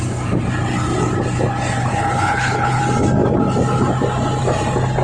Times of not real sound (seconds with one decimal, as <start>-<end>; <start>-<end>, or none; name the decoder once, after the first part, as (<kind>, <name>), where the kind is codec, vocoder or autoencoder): 1.8-2.8 (codec, HILCodec)